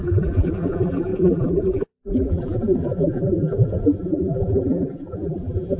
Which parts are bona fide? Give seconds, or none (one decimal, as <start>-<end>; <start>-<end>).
none